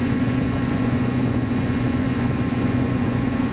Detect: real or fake fake